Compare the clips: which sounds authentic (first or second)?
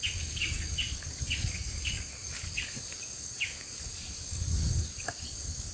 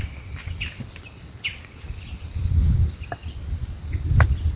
second